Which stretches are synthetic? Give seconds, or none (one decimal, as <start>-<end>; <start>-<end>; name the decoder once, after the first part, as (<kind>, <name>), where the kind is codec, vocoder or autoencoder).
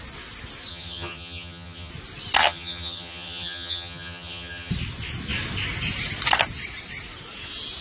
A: 0.7-1.9 (vocoder, HiFi-GAN); 2.4-4.7